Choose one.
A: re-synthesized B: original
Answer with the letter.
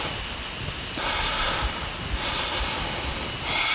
B